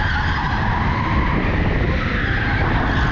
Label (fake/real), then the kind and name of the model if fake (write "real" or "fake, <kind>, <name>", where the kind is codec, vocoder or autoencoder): real